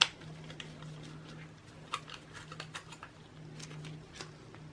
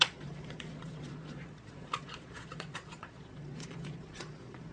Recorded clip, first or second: first